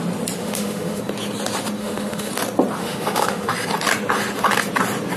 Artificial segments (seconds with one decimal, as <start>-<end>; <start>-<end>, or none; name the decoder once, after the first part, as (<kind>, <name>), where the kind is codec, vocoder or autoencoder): 0.4-1.0 (autoencoder, DAC-VAE); 1.8-2.3; 2.8-3.5